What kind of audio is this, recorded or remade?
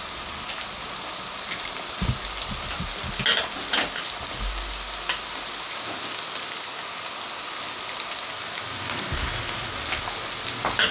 recorded